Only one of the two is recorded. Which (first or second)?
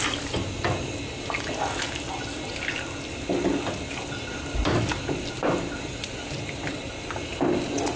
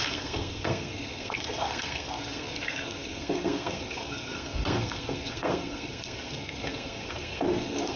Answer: first